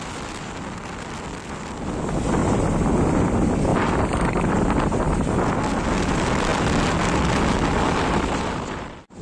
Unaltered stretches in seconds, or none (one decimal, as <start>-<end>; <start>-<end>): 0.0-2.4; 3.3-3.7; 5.2-9.2